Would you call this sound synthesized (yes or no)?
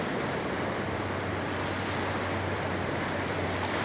yes